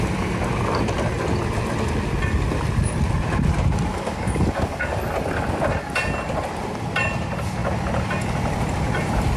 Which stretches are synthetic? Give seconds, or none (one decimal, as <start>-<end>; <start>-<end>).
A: 3.9-5.0